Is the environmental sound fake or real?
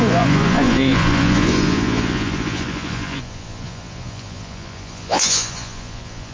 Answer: fake